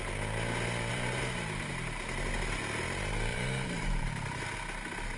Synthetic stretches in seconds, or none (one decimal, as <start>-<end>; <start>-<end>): 0.9-1.7; 3.3-4.4